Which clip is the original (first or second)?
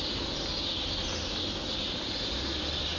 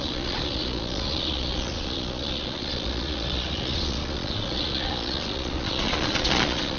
first